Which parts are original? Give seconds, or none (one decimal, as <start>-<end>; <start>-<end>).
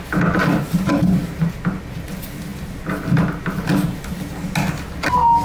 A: 0.0-0.4; 1.5-5.4